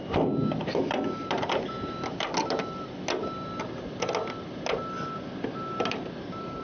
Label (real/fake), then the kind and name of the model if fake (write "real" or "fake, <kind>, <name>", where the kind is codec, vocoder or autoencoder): real